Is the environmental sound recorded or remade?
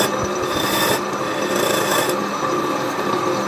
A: recorded